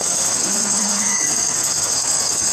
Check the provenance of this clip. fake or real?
fake